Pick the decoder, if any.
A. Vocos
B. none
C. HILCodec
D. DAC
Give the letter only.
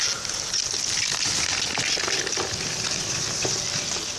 B